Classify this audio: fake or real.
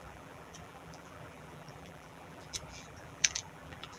fake